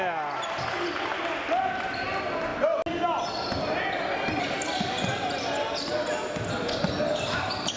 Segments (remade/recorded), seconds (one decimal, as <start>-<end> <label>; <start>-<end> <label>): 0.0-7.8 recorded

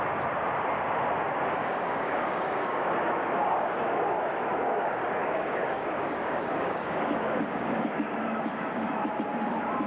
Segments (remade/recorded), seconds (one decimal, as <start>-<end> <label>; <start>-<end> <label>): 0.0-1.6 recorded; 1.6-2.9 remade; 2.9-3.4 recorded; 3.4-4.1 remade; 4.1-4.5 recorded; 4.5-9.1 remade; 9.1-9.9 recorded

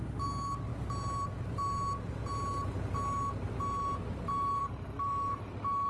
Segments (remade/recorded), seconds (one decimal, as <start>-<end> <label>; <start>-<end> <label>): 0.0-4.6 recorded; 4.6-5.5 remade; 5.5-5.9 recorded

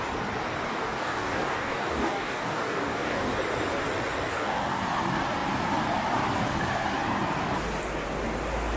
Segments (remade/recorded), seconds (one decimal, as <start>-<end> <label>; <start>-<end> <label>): 0.0-0.7 recorded; 0.7-3.3 remade; 3.3-4.3 recorded; 4.3-4.8 remade; 4.8-8.8 recorded

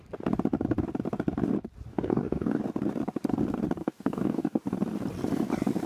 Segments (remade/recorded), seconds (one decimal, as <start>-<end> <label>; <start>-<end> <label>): 0.0-1.9 recorded; 1.9-2.6 remade; 2.6-3.8 recorded; 3.8-4.6 remade; 4.6-5.9 recorded